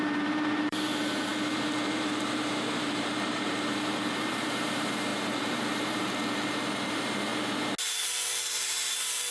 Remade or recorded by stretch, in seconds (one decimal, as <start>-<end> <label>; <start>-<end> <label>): 0.0-7.3 remade; 7.3-7.9 recorded; 7.9-9.3 remade